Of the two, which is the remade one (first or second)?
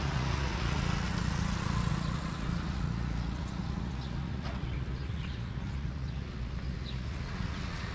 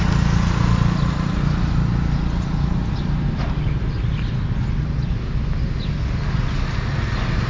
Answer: first